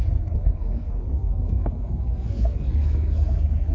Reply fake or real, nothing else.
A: fake